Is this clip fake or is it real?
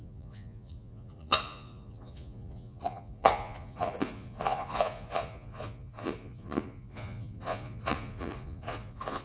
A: fake